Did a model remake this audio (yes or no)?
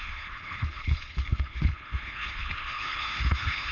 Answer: yes